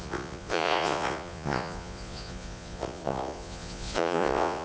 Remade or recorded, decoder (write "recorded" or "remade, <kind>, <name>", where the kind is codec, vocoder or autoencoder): remade, vocoder, Vocos